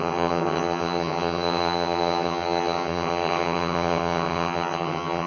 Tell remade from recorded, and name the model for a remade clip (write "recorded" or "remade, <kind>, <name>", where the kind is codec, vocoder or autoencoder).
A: remade, vocoder, HiFi-GAN